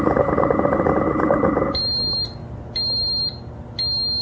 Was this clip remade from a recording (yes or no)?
no